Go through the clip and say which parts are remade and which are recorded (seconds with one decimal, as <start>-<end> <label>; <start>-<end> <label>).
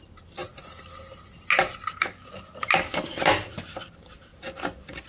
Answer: 0.0-5.1 recorded